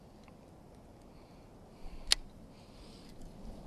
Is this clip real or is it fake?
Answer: real